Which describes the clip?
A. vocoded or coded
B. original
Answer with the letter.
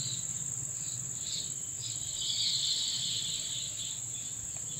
B